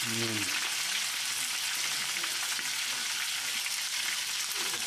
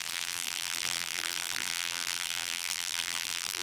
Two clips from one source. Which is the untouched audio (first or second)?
first